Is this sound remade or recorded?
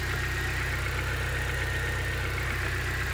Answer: recorded